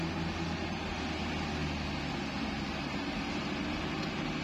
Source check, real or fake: real